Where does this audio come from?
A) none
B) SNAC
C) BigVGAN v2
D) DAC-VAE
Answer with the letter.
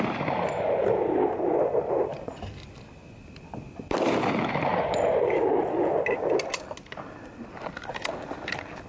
A